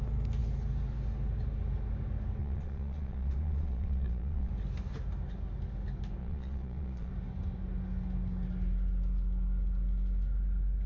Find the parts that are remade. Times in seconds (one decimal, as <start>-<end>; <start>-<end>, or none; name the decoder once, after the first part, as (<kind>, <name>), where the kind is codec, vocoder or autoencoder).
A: 2.4-4.5 (vocoder, Vocos); 6.2-7.1